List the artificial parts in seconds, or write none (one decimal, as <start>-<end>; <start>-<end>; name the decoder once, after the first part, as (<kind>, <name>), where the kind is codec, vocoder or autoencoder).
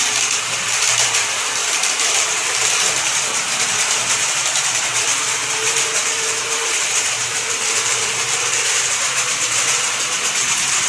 0.0-10.9 (vocoder, BigVGAN v2)